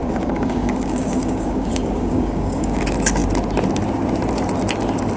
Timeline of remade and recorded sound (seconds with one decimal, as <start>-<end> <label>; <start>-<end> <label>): 0.0-2.8 remade; 2.8-5.2 recorded